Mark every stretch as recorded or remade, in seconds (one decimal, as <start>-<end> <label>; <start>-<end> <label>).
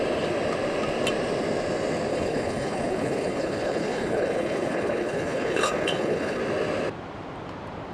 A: 0.0-2.1 recorded; 2.1-6.4 remade; 6.4-7.9 recorded